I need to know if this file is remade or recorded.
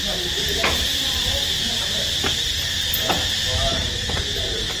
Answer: recorded